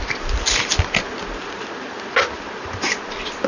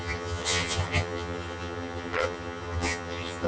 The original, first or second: first